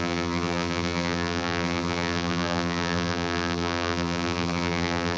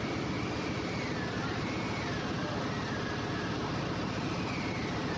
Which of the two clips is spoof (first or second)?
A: first